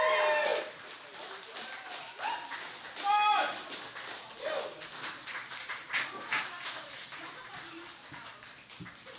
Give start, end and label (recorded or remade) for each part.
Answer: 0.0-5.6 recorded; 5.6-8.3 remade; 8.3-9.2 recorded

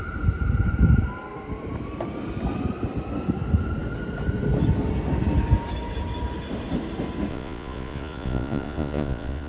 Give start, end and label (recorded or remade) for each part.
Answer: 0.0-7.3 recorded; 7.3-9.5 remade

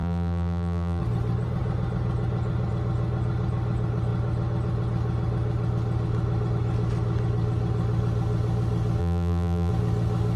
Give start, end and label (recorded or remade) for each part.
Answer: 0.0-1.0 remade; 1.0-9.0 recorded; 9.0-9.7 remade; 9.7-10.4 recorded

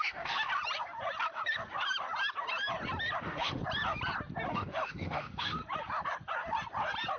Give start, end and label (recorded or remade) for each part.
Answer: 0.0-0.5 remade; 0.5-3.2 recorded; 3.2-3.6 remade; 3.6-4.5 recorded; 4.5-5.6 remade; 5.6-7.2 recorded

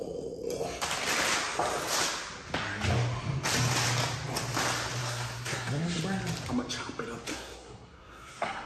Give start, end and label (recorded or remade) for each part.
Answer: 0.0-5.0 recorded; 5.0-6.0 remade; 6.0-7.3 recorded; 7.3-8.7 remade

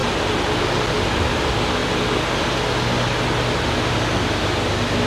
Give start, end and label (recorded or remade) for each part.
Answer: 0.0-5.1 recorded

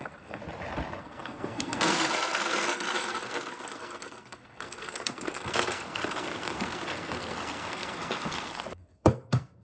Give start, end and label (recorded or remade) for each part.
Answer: 0.0-0.4 remade; 0.4-1.0 recorded; 1.0-9.6 remade